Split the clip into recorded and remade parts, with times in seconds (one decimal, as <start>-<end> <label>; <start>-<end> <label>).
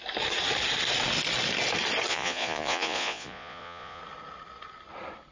0.0-2.1 recorded; 2.1-4.0 remade; 4.0-5.3 recorded